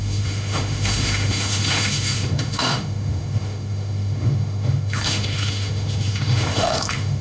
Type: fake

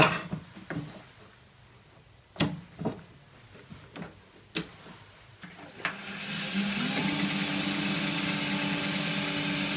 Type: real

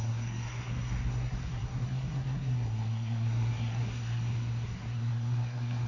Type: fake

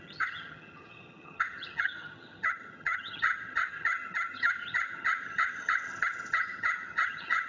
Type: fake